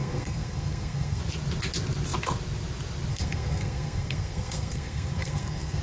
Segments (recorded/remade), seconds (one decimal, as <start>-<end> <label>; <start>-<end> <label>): 0.0-1.2 remade; 1.2-3.1 recorded; 3.1-5.8 remade